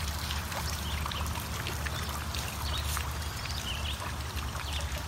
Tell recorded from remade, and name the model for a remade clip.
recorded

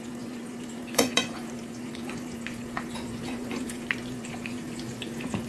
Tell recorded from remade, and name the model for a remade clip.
remade, vocoder, Vocos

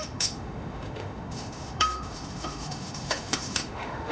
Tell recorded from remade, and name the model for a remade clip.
remade, autoencoder, DAC-VAE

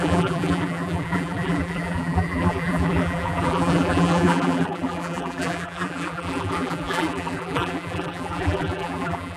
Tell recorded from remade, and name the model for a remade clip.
remade, vocoder, BigVGAN v2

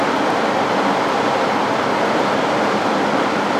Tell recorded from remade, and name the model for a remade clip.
recorded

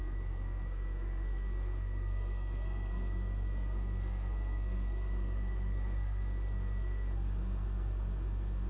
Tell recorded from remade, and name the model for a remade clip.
remade, codec, SNAC